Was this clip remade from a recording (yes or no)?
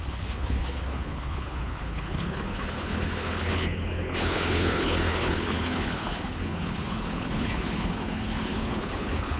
yes